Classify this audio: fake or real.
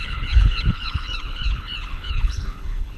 fake